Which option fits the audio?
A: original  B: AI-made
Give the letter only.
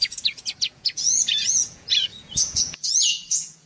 B